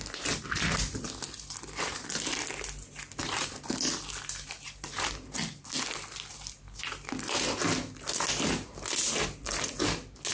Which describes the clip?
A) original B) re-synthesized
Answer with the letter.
A